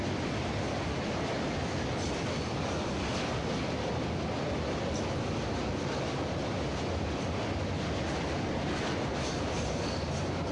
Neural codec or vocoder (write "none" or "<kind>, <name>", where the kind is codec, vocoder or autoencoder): none